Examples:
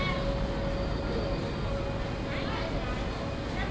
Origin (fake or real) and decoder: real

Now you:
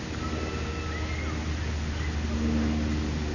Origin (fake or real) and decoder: real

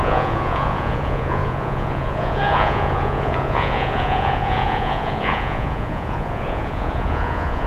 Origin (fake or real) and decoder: fake, vocoder, Vocos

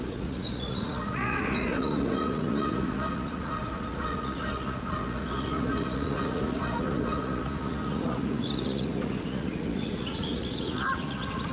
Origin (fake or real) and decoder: fake, vocoder, Vocos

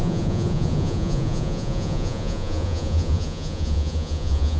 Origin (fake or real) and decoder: fake, vocoder, Vocos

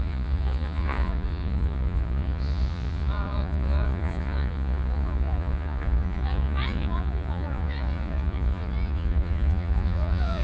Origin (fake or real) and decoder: fake, vocoder, Vocos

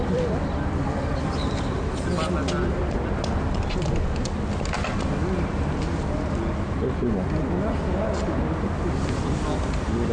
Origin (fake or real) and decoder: real